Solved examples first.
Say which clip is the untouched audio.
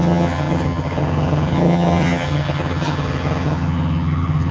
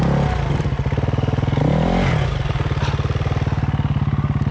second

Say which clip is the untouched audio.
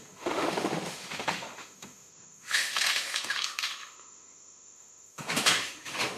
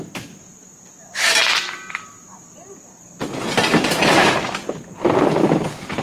second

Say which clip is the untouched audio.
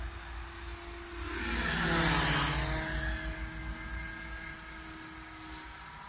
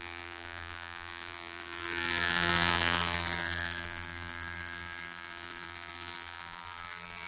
first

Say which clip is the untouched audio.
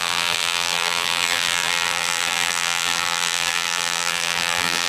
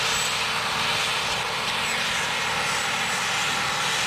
second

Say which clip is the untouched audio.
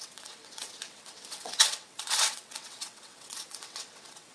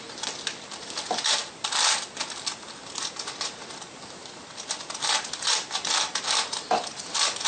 second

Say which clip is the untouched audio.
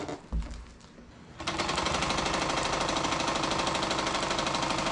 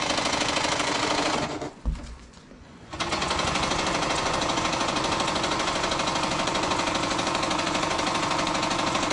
first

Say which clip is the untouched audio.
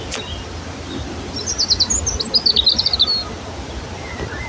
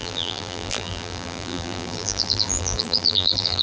first